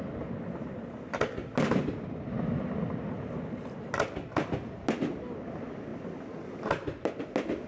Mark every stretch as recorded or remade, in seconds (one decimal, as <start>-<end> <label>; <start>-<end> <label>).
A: 0.0-7.7 recorded